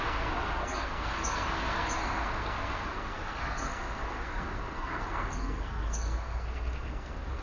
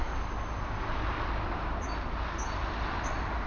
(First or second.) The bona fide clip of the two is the second